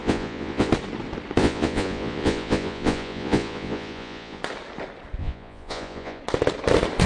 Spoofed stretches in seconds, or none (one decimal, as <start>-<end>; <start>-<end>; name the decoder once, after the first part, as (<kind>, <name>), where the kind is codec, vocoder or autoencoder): 0.0-0.7 (vocoder, Vocos); 1.4-4.4; 5.2-6.2